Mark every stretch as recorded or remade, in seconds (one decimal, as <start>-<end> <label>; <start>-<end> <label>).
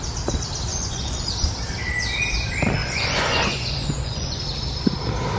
0.0-0.7 recorded; 0.7-1.3 remade; 1.3-2.8 recorded; 2.8-4.4 remade; 4.4-5.4 recorded